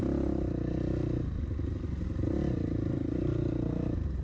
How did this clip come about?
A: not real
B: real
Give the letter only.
B